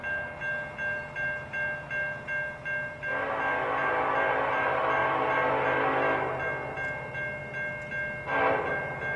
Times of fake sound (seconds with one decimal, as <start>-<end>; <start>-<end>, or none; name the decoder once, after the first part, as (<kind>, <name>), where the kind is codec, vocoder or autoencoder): none